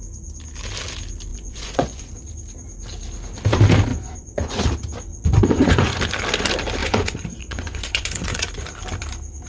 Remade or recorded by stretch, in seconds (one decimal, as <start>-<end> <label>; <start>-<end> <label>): 0.0-1.3 recorded; 1.3-2.1 remade; 2.1-3.9 recorded; 3.9-4.6 remade; 4.6-5.1 recorded; 5.1-6.0 remade; 6.0-6.8 recorded; 6.8-8.5 remade; 8.5-9.5 recorded